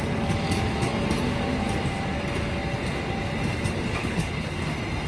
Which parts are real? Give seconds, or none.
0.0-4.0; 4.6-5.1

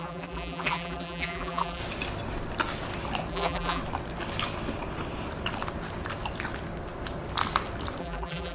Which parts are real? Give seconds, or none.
1.8-3.3; 3.8-8.0

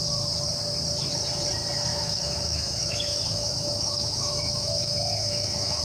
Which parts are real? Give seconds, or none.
0.0-1.9

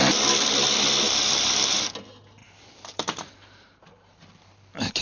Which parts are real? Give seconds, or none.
0.0-2.4

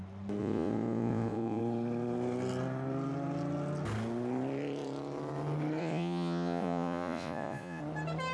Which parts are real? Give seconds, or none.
0.0-0.4; 1.6-5.8; 7.8-8.3

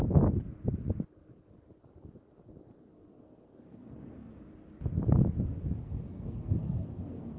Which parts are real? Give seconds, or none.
0.0-2.9; 4.4-5.8